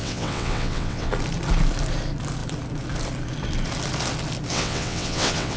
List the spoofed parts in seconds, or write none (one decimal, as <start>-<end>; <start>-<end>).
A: 0.0-1.1; 4.5-5.6